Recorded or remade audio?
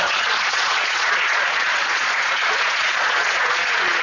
remade